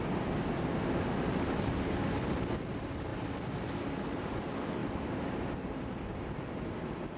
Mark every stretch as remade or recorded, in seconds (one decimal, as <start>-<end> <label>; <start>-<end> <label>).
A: 0.0-0.7 recorded; 0.7-2.4 remade; 2.4-3.1 recorded; 3.1-4.3 remade; 4.3-4.8 recorded; 4.8-6.6 remade; 6.6-7.2 recorded